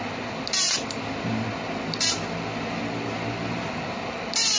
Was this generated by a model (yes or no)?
no